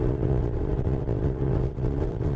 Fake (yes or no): yes